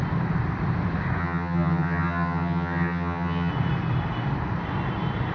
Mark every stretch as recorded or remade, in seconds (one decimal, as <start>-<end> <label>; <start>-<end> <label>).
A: 0.0-1.2 recorded; 1.2-3.5 remade; 3.5-5.3 recorded